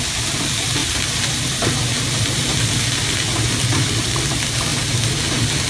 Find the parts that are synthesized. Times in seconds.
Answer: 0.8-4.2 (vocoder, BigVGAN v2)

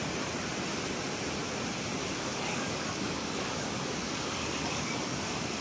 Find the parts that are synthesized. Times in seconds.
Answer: 2.0-5.6 (codec, DAC)